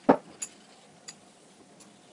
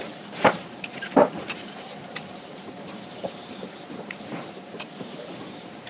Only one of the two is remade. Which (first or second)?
second